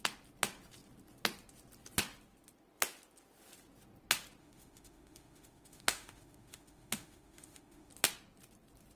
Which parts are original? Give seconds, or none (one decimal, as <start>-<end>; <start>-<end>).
0.0-4.4; 7.9-9.0